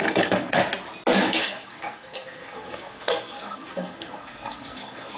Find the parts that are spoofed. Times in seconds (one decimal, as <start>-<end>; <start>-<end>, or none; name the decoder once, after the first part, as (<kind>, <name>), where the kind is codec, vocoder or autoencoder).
0.0-0.6 (codec, SNAC); 1.2-5.2